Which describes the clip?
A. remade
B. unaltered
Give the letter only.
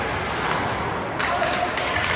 B